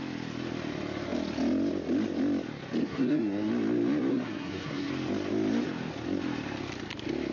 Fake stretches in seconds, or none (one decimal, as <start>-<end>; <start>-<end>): 2.8-3.5; 4.1-4.9